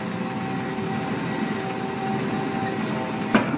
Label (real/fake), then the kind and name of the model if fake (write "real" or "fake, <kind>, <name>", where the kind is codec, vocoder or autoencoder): real